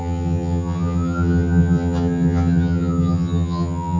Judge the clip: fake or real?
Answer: fake